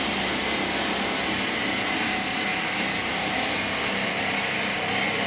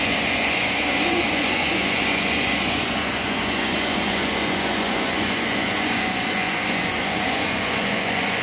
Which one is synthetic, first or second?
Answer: second